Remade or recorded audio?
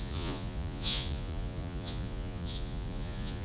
remade